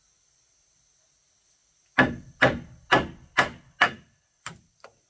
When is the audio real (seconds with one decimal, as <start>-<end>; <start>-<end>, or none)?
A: 0.0-5.1